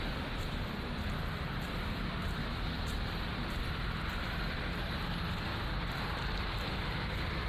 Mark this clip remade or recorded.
remade